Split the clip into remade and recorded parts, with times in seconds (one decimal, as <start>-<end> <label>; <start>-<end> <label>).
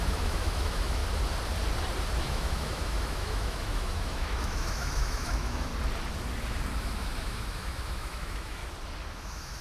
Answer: 0.0-1.0 remade; 1.0-2.2 recorded; 2.2-5.7 remade; 5.7-6.8 recorded; 6.8-8.6 remade; 8.6-9.1 recorded; 9.1-9.6 remade